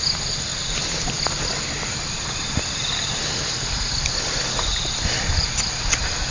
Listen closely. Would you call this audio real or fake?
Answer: real